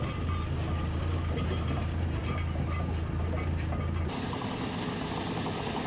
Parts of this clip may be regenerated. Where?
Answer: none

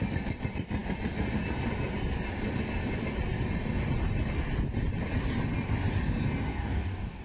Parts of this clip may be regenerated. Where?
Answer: 6.5-7.2

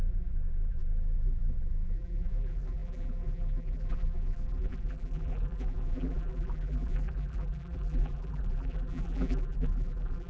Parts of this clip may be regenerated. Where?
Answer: 0.0-10.3

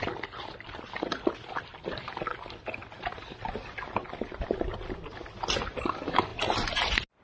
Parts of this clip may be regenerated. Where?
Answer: none